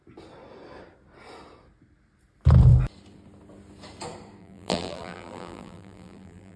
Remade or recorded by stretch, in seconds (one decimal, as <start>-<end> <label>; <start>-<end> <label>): 0.0-4.4 recorded; 4.4-6.6 remade